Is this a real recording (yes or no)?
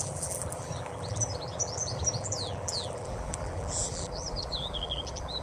no